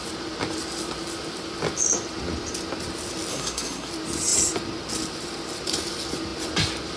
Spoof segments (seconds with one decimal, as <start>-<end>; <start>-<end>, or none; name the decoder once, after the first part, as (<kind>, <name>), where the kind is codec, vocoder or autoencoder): 3.3-3.9 (codec, SNAC)

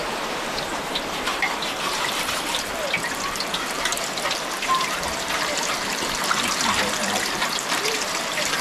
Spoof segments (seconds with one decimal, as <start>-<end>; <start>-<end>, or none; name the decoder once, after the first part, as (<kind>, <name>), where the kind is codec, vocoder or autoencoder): 0.0-8.6 (vocoder, BigVGAN v2)